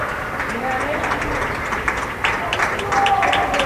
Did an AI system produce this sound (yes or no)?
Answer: no